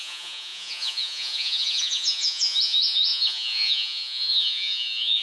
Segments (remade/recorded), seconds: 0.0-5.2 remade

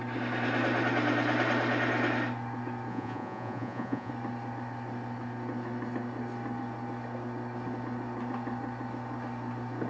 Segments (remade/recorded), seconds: 0.0-2.9 recorded; 2.9-4.1 remade; 4.1-9.9 recorded

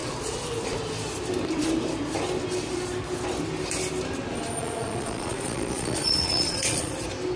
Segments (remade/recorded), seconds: 0.0-4.6 recorded; 4.6-6.9 remade; 6.9-7.4 recorded

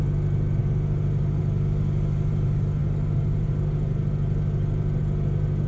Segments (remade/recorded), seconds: 0.0-5.7 recorded